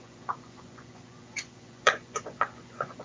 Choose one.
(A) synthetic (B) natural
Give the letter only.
A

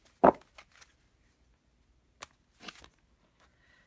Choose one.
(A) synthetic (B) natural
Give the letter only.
B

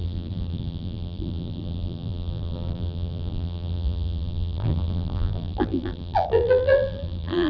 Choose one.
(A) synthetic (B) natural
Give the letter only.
A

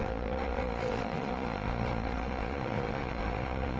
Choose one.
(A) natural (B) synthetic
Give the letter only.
B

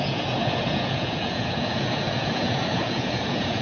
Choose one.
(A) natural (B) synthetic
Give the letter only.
B